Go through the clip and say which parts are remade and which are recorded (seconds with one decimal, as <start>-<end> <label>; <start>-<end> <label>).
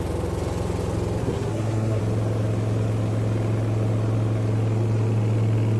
0.0-1.2 recorded; 1.2-2.0 remade; 2.0-5.8 recorded